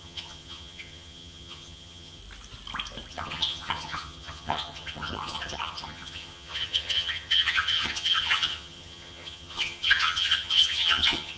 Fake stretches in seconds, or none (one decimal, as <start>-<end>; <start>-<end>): 0.0-2.2; 3.1-11.4